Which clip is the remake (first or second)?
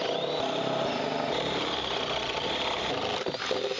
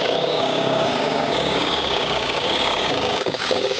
second